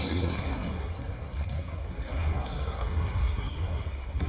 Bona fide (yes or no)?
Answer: no